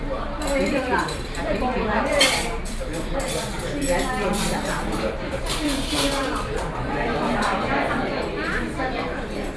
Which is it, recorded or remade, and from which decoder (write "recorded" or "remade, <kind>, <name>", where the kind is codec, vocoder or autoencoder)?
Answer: remade, vocoder, BigVGAN v2